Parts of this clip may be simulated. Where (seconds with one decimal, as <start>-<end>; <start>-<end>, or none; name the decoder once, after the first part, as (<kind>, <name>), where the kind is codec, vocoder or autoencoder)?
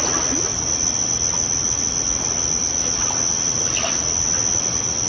none